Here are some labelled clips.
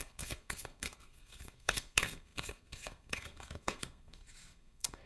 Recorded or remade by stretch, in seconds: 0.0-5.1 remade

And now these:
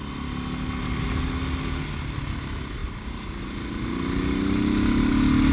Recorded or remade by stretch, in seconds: 0.0-5.5 recorded

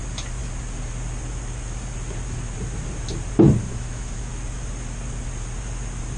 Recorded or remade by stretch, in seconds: 0.0-3.6 recorded; 3.6-4.3 remade; 4.3-6.2 recorded

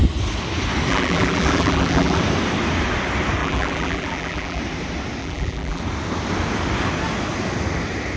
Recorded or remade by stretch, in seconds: 0.0-0.9 recorded; 0.9-2.2 remade; 2.2-3.4 recorded; 3.4-4.6 remade; 4.6-5.2 recorded; 5.2-5.8 remade; 5.8-8.2 recorded

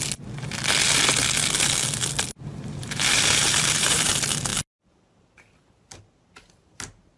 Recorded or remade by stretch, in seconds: 0.0-2.5 recorded; 2.5-4.1 remade; 4.1-7.2 recorded

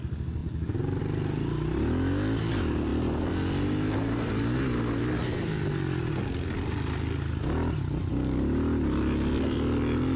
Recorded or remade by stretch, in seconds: 0.0-0.4 recorded; 0.4-1.0 remade; 1.0-10.2 recorded

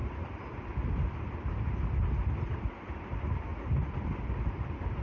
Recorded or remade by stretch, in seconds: 0.0-5.0 recorded